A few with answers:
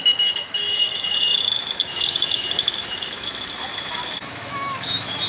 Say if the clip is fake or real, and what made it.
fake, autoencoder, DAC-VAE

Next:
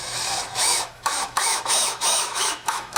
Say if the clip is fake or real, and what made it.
fake, autoencoder, DAC-VAE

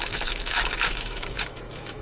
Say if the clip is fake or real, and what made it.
fake, autoencoder, DAC-VAE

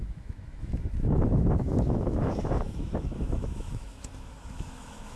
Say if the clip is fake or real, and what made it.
fake, autoencoder, DAC-VAE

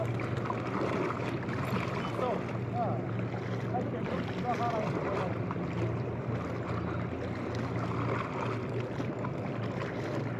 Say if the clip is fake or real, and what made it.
real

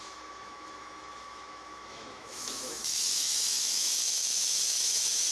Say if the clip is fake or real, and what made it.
fake, autoencoder, DAC-VAE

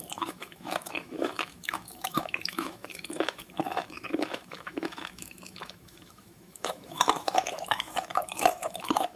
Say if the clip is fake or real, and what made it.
fake, autoencoder, DAC-VAE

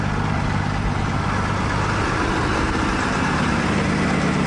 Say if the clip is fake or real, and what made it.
real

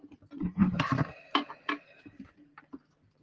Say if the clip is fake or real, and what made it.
real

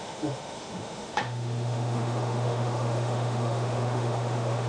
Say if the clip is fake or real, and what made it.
fake, autoencoder, DAC-VAE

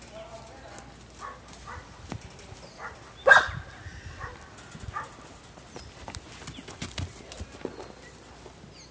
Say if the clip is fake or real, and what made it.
real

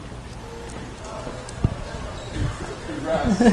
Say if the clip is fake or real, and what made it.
real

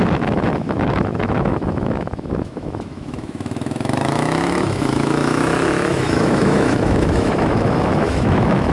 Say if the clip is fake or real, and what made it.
fake, autoencoder, DAC-VAE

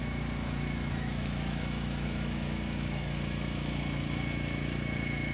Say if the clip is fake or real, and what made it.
fake, autoencoder, DAC-VAE